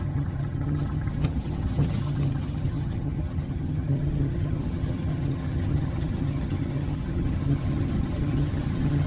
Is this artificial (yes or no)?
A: yes